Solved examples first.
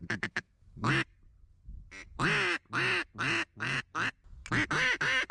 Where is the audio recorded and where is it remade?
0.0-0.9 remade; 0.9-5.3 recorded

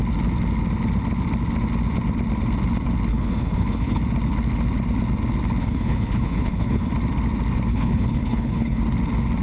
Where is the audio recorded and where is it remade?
0.0-3.1 recorded; 3.1-4.0 remade; 4.0-5.6 recorded; 5.6-6.9 remade; 6.9-7.7 recorded; 7.7-8.8 remade; 8.8-9.4 recorded

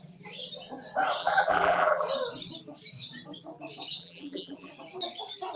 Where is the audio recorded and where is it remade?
0.0-1.2 recorded; 1.2-2.1 remade; 2.1-4.0 recorded; 4.0-4.7 remade; 4.7-5.5 recorded

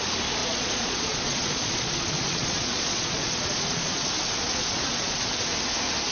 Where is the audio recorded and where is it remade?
0.0-0.4 recorded; 0.4-4.1 remade; 4.1-4.5 recorded; 4.5-5.2 remade; 5.2-6.1 recorded

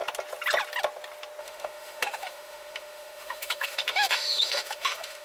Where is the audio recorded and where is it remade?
0.0-1.4 recorded; 1.4-5.2 remade

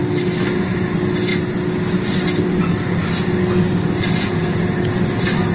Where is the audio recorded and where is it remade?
0.0-5.5 recorded